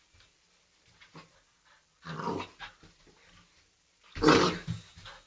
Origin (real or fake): real